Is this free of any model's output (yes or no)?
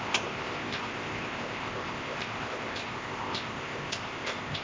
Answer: no